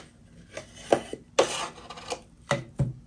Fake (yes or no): no